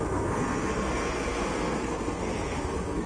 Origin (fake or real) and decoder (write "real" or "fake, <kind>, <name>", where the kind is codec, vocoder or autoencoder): fake, codec, SNAC